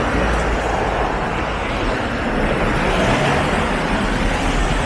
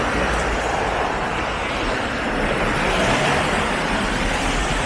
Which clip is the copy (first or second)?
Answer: second